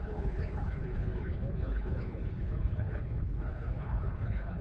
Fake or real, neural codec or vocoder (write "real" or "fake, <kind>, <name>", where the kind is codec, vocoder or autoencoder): fake, codec, HILCodec